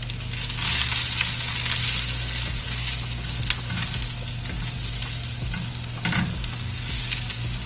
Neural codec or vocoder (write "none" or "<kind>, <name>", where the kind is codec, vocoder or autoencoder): none